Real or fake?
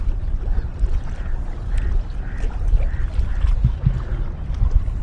real